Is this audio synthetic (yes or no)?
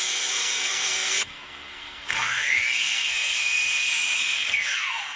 yes